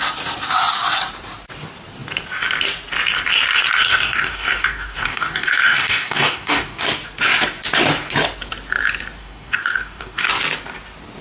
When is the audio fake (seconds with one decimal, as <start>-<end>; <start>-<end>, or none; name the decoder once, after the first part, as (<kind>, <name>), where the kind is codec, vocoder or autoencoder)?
3.8-6.8 (codec, DAC); 9.2-10.3